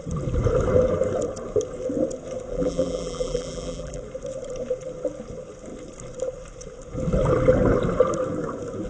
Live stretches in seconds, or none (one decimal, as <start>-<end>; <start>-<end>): 0.0-2.5; 4.0-8.9